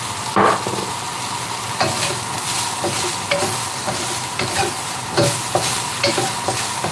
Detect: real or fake real